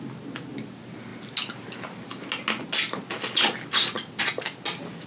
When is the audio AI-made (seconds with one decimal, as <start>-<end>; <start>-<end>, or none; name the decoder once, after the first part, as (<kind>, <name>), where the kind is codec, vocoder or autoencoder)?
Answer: none